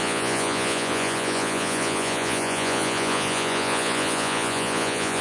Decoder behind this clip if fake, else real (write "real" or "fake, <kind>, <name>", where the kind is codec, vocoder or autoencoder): fake, vocoder, Vocos